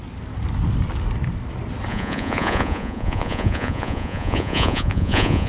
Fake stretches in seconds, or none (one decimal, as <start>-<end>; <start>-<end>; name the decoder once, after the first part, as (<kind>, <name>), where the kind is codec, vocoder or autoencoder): 1.9-5.5 (vocoder, Vocos)